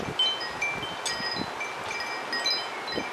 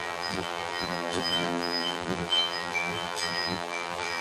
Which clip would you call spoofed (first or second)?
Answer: second